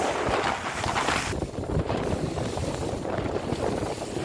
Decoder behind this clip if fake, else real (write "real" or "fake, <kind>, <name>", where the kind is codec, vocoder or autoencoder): real